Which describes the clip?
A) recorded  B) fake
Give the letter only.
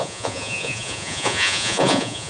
B